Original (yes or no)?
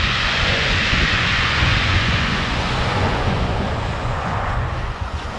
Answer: no